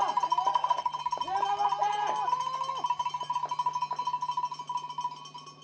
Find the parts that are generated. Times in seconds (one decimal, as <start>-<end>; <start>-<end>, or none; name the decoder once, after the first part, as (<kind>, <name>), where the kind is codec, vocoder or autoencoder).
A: 0.5-1.0 (codec, SNAC)